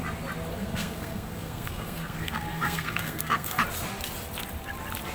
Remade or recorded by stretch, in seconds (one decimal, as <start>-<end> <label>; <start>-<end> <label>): 0.0-0.5 recorded; 0.5-3.6 remade; 3.6-5.1 recorded